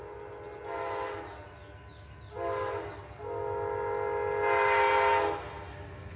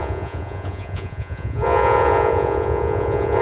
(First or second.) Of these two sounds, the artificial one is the second